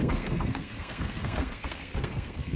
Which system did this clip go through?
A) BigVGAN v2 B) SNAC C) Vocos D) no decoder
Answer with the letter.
B